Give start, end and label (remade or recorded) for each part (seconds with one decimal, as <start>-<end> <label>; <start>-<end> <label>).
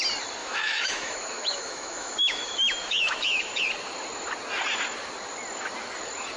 0.0-0.4 recorded; 0.4-3.6 remade; 3.6-6.4 recorded